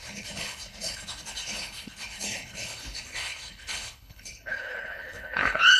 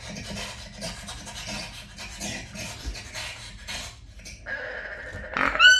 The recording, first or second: second